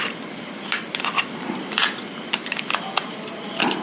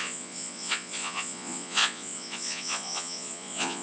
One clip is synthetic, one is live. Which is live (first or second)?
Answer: first